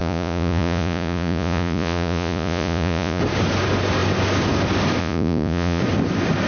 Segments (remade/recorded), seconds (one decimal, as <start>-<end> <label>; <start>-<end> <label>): 0.0-3.2 remade; 3.2-5.0 recorded; 5.0-5.8 remade; 5.8-6.5 recorded